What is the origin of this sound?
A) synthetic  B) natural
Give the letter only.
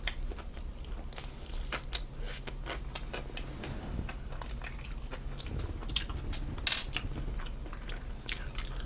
B